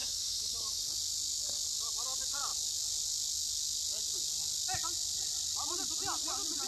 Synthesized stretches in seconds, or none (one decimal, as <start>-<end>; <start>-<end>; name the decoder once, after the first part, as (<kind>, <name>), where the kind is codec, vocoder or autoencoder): 0.0-0.8 (autoencoder, DAC-VAE)